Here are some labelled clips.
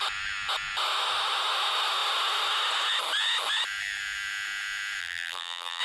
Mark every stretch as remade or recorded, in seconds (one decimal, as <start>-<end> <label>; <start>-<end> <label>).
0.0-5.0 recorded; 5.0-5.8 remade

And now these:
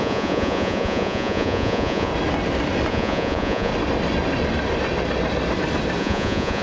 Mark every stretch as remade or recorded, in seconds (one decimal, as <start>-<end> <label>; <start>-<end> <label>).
0.0-2.1 remade; 2.1-2.9 recorded; 2.9-3.7 remade; 3.7-6.0 recorded; 6.0-6.6 remade

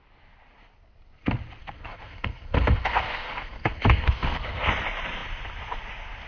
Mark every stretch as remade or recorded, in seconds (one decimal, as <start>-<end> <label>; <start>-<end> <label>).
0.0-1.6 recorded; 1.6-4.7 remade; 4.7-6.3 recorded

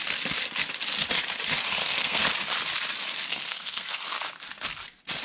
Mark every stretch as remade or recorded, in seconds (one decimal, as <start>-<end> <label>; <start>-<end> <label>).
0.0-1.8 recorded; 1.8-2.3 remade; 2.3-3.3 recorded; 3.3-4.0 remade; 4.0-5.2 recorded

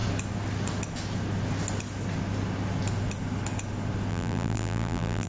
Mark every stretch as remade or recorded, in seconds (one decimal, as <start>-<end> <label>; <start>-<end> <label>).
0.0-4.1 recorded; 4.1-5.3 remade

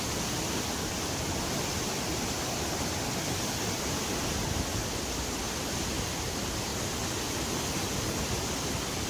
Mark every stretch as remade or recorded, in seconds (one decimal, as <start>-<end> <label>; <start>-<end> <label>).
0.0-9.1 recorded

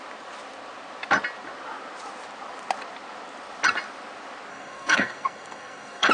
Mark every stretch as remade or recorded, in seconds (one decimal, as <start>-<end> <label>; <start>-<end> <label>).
0.0-4.5 recorded; 4.5-6.1 remade